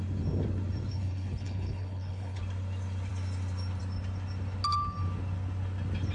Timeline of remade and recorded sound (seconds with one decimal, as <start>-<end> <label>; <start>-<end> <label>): 0.0-0.9 recorded; 0.9-2.4 remade; 2.4-6.1 recorded